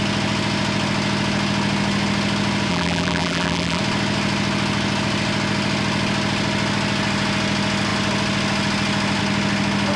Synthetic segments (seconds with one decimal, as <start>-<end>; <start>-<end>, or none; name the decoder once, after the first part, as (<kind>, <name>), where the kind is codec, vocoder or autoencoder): 2.7-3.8 (vocoder, BigVGAN v2)